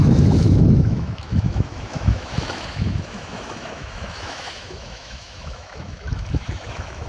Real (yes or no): no